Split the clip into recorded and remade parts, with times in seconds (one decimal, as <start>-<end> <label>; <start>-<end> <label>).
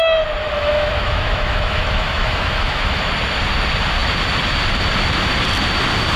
0.0-0.4 recorded; 0.4-3.0 remade; 3.0-6.2 recorded